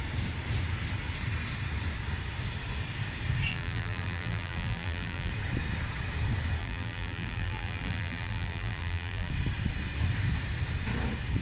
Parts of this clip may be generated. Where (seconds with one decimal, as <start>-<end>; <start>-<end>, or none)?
3.5-5.3; 6.6-9.3